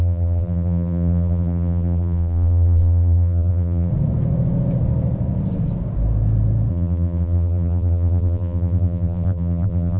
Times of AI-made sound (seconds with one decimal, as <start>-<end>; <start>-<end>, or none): 0.0-3.9; 6.7-10.0